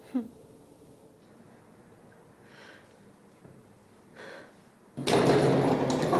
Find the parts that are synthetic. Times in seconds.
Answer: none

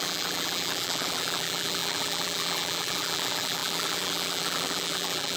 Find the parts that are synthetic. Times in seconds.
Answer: 0.0-5.4 (vocoder, BigVGAN v2)

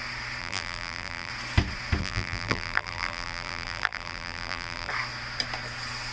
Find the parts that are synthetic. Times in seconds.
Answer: 0.4-1.3 (vocoder, BigVGAN v2); 2.0-4.9